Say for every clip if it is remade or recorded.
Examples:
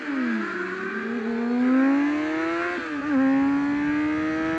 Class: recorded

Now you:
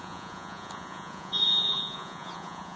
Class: remade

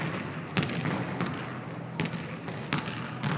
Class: recorded